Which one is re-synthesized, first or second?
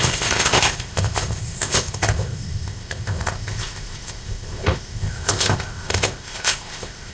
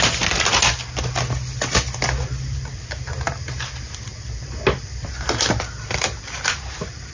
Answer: first